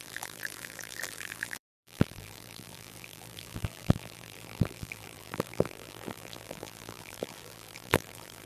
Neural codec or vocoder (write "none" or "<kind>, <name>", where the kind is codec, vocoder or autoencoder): vocoder, BigVGAN v2